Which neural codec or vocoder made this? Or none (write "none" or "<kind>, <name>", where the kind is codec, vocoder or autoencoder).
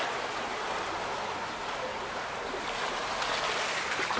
none